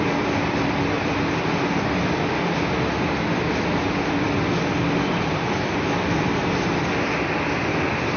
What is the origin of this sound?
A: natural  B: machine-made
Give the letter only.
A